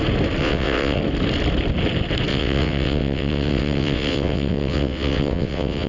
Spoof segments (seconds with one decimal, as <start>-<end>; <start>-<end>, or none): 0.4-1.0; 2.3-5.9